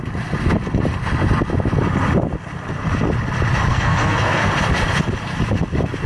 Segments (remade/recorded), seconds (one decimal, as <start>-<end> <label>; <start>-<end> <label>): 0.0-3.7 recorded; 3.7-4.5 remade; 4.5-6.1 recorded